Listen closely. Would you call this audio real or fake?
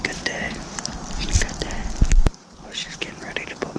real